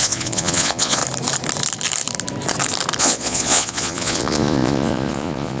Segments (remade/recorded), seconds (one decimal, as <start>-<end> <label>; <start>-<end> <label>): 0.0-1.0 remade; 1.0-3.0 recorded; 3.0-5.6 remade